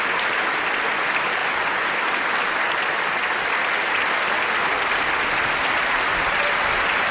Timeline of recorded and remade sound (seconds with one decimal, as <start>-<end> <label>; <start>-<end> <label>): 0.0-7.1 recorded